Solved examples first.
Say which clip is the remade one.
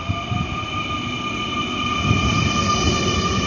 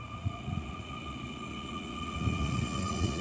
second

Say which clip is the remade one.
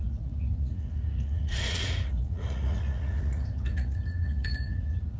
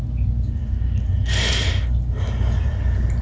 first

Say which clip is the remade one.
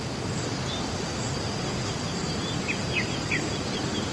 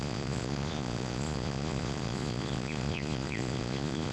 second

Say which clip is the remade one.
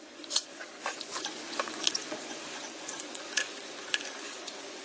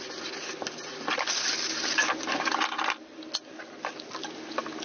first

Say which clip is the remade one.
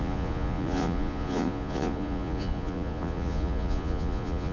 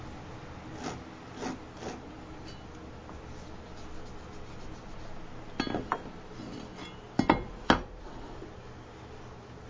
first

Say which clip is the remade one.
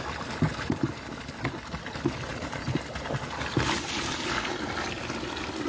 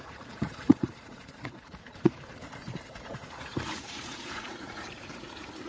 second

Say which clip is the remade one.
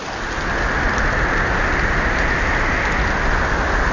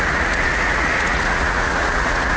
second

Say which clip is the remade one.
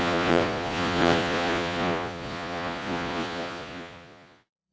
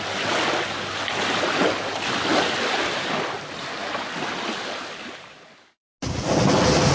first